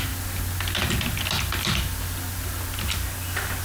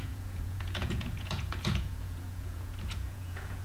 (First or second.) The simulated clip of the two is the second